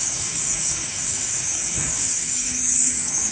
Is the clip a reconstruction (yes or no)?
yes